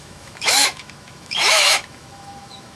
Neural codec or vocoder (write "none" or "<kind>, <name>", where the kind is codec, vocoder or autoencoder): autoencoder, DAC-VAE